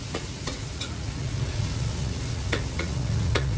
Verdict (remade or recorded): remade